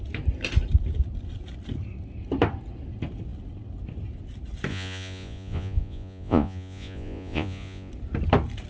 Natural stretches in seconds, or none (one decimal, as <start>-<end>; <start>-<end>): 0.0-4.7; 7.9-8.7